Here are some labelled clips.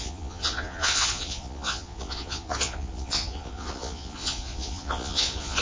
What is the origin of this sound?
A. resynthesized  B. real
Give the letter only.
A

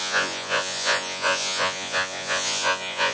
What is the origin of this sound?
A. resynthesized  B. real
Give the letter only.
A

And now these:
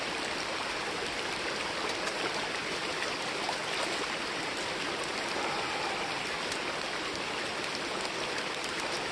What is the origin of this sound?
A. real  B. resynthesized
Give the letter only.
A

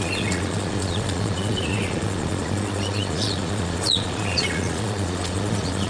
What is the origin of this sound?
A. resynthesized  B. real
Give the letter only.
A